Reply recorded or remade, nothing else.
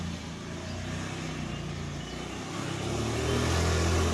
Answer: recorded